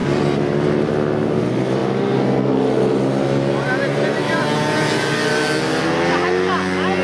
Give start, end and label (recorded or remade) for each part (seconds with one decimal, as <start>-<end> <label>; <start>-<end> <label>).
0.0-7.0 recorded

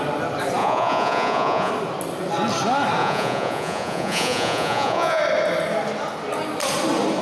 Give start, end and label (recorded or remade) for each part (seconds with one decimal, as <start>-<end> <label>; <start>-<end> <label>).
0.0-0.6 recorded; 0.6-1.7 remade; 1.7-3.0 recorded; 3.0-5.2 remade; 5.2-7.2 recorded

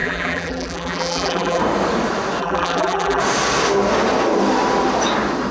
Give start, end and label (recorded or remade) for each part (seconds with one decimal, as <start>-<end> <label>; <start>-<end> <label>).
0.0-1.6 remade; 1.6-2.4 recorded; 2.4-3.2 remade; 3.2-5.5 recorded

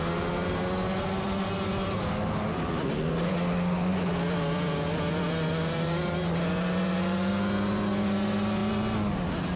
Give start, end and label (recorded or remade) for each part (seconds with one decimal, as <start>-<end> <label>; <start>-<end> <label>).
0.0-9.6 recorded

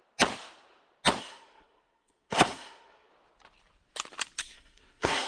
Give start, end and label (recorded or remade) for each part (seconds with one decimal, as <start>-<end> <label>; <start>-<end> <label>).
0.0-1.2 recorded; 1.2-3.1 remade; 3.1-4.4 recorded; 4.4-5.3 remade